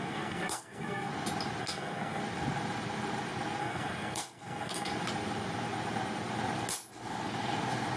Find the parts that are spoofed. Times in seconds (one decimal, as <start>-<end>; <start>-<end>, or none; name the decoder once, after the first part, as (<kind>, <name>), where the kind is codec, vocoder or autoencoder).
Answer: 0.0-1.1 (codec, SNAC); 1.6-2.2; 3.6-4.9